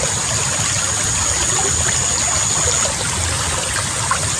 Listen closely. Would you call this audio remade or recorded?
recorded